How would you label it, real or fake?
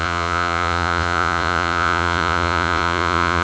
fake